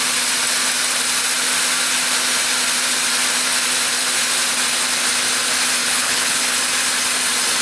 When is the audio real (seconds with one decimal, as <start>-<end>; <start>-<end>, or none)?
0.0-5.8; 6.6-7.6